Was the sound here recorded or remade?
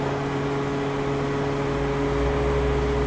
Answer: recorded